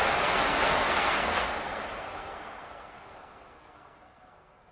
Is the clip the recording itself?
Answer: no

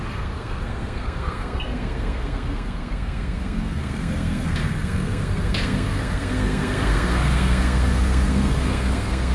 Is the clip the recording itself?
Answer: no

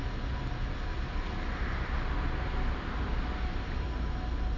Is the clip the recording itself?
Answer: yes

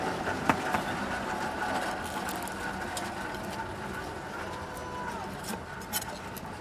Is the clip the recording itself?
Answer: yes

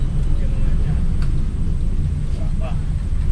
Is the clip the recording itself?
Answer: yes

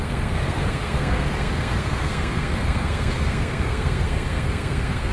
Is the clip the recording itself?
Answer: no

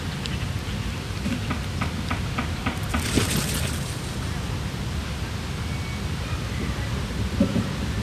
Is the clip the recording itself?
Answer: yes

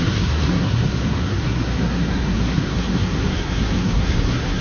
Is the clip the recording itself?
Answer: no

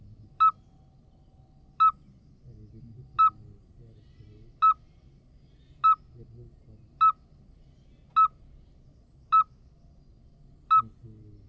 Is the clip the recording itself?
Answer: yes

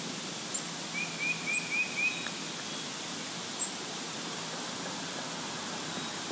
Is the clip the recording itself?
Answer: yes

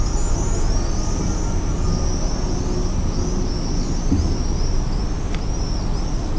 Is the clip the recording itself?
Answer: yes